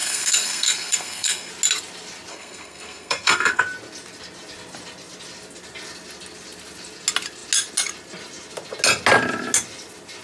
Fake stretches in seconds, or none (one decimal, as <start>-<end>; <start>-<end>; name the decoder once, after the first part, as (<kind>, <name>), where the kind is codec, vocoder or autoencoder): 0.0-1.5 (codec, SNAC); 2.3-3.6